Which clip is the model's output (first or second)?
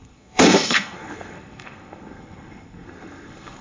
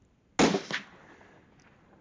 first